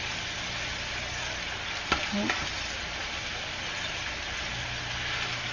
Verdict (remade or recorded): recorded